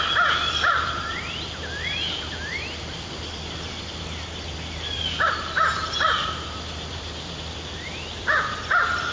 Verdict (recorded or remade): remade